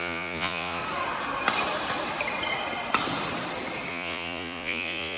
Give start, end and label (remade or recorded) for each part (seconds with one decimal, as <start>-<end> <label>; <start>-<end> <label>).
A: 0.0-0.8 remade; 0.8-3.9 recorded; 3.9-5.2 remade